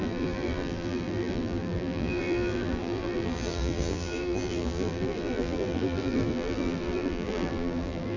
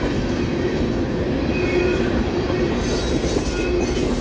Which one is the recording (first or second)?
second